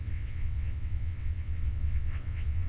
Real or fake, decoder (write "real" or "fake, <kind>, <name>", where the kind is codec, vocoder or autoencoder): fake, vocoder, WaveNeXt